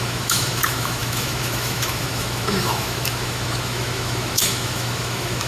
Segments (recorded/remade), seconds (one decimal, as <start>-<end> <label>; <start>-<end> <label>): 0.0-5.5 remade